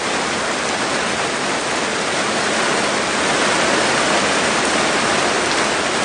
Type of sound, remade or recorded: recorded